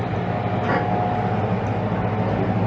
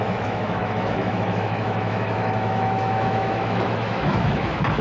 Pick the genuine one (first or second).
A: first